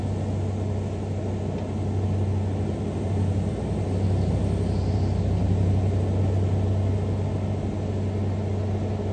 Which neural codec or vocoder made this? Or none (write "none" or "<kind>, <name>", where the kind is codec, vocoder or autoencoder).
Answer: none